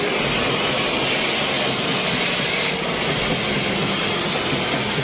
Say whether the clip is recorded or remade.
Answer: recorded